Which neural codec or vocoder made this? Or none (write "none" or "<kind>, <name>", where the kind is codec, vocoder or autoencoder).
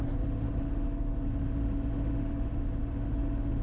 none